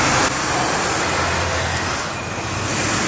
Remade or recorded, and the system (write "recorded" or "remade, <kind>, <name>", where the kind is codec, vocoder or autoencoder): recorded